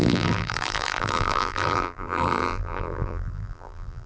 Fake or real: fake